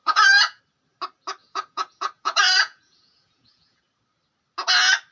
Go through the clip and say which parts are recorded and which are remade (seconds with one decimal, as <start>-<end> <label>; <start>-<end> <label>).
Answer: 0.0-0.6 remade; 0.6-1.4 recorded; 1.4-3.8 remade; 3.8-5.1 recorded